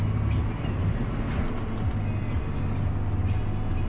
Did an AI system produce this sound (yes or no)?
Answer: no